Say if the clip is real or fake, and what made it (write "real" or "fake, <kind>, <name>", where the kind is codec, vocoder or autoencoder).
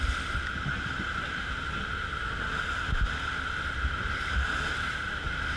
real